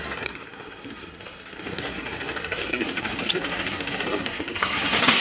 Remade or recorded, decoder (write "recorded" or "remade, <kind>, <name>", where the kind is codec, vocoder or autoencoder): remade, codec, SNAC